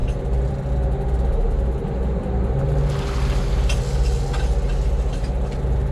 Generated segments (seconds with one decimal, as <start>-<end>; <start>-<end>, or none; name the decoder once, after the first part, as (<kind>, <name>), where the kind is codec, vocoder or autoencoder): none